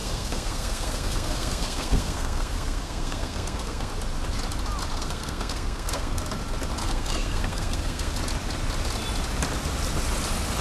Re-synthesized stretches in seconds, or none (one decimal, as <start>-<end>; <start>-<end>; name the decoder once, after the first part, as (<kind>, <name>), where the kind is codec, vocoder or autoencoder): 0.0-3.9 (codec, SNAC); 4.9-6.2; 6.8-8.1